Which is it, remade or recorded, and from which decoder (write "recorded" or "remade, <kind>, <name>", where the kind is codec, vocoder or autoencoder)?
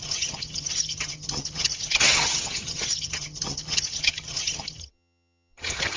remade, vocoder, HiFi-GAN